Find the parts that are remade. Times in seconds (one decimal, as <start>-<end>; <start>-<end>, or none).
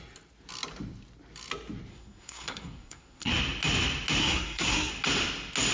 1.9-3.3; 4.2-4.9